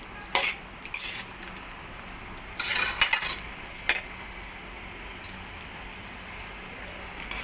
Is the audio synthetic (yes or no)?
no